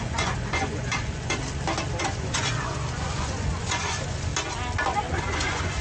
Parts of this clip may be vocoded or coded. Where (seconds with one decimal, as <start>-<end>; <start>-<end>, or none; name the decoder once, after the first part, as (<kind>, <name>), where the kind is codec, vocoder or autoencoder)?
0.0-1.4 (vocoder, Vocos); 2.0-4.3; 5.1-5.8